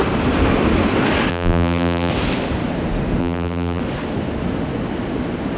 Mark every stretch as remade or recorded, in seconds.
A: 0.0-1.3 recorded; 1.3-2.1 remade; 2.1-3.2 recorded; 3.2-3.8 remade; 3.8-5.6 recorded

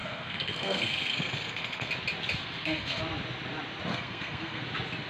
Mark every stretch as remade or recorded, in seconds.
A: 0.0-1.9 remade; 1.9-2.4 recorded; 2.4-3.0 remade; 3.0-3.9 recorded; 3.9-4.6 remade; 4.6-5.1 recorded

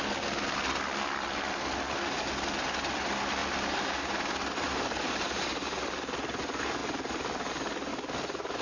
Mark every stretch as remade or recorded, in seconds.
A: 0.0-3.4 recorded; 3.4-5.0 remade; 5.0-8.6 recorded